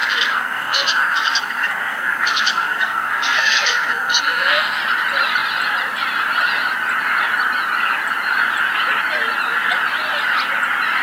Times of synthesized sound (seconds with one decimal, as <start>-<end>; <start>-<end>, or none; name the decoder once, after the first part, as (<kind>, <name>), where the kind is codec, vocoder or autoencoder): 0.0-4.8 (codec, SNAC)